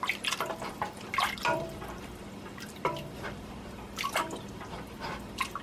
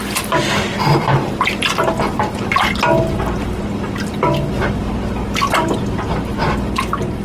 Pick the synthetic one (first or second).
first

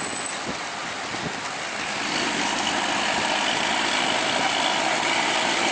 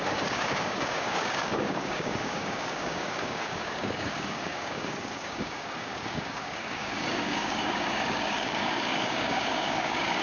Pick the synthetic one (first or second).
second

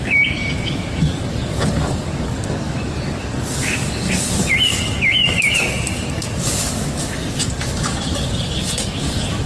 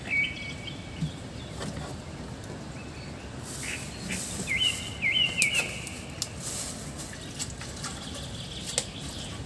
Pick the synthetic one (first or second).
first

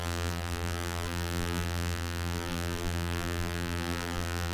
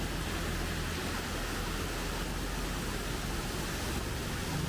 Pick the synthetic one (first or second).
first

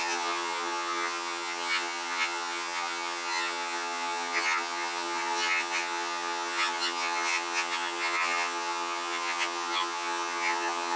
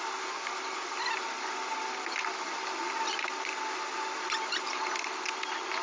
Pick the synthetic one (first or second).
first